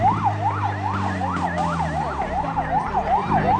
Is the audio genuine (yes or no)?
yes